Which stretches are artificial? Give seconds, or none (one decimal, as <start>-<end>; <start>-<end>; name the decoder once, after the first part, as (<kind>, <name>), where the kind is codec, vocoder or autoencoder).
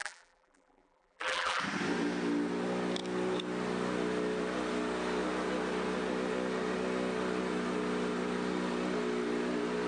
0.0-1.6 (vocoder, BigVGAN v2)